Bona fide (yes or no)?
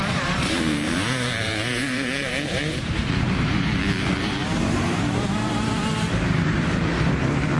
no